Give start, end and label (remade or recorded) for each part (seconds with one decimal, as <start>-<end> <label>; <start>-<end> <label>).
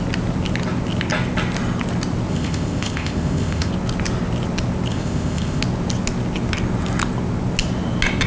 0.0-2.3 recorded; 2.3-3.7 remade; 3.7-4.9 recorded; 4.9-5.6 remade; 5.6-8.3 recorded